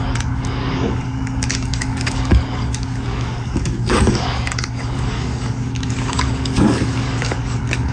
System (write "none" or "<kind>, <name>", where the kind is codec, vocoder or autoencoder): codec, DAC